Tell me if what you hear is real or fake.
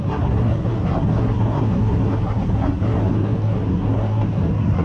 fake